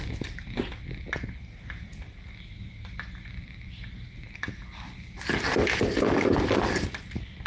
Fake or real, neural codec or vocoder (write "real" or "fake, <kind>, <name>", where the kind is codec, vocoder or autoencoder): real